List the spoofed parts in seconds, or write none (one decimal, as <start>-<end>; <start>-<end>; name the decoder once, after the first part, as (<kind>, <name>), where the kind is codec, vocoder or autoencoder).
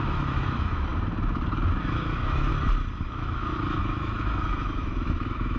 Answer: 0.0-0.9 (autoencoder, DAC-VAE); 1.8-2.5; 3.1-5.6